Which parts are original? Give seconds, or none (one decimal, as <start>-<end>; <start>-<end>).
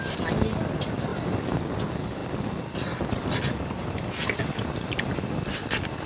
0.0-6.1